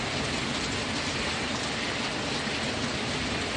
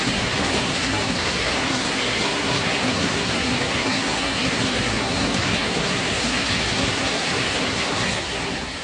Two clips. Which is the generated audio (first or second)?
second